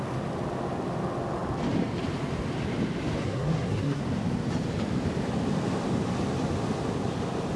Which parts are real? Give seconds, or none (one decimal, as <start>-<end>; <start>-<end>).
0.0-3.2; 4.0-7.6